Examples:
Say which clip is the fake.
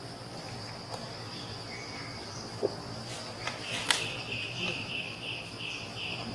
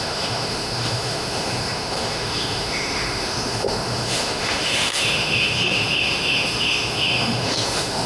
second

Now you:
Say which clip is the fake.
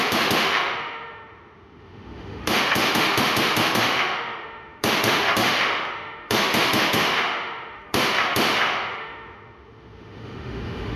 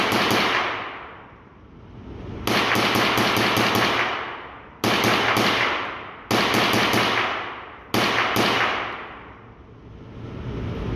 first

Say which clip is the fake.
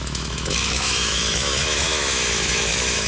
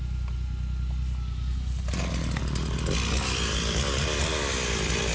first